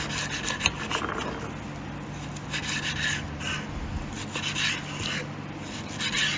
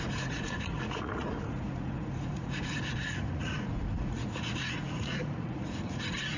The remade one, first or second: second